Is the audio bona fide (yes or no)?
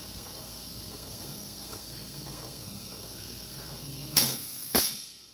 no